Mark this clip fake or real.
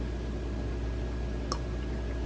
real